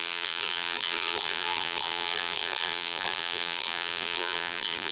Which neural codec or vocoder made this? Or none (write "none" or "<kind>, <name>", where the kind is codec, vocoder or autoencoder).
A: vocoder, BigVGAN v2